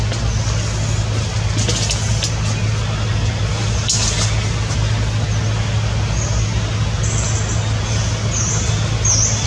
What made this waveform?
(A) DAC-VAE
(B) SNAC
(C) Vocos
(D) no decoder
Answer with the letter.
D